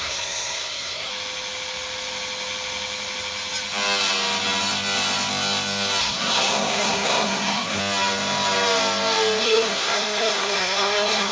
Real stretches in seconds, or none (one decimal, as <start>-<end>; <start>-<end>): 1.1-6.0; 7.8-9.4